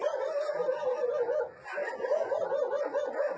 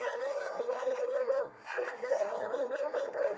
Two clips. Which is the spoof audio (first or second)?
second